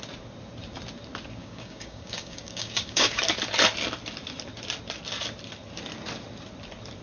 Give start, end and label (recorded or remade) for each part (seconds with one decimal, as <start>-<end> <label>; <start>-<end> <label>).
0.0-1.4 recorded; 1.4-3.2 remade; 3.2-7.0 recorded